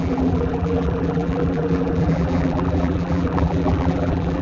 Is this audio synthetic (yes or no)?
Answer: yes